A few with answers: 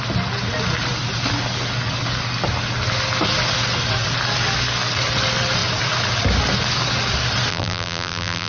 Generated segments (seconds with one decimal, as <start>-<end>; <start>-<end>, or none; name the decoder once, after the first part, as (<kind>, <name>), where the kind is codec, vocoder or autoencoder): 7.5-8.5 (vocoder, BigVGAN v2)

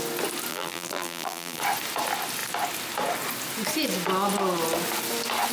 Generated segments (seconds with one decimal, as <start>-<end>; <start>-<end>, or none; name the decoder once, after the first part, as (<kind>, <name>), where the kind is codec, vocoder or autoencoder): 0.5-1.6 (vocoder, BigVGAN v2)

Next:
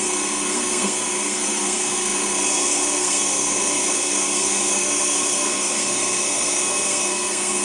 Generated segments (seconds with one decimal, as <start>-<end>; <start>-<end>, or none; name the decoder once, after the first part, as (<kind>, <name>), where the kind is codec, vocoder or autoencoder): 0.0-7.6 (codec, SNAC)

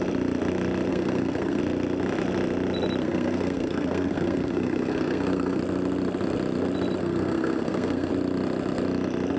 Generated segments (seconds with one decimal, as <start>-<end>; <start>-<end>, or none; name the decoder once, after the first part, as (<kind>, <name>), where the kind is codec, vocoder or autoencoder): 0.9-1.6 (codec, SNAC); 3.0-5.6; 7.0-8.1